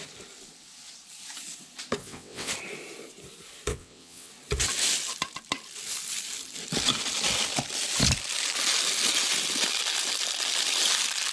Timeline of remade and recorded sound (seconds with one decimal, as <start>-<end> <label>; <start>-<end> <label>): 0.0-2.0 recorded; 2.0-2.5 remade; 2.5-3.7 recorded; 3.7-4.3 remade; 4.3-11.3 recorded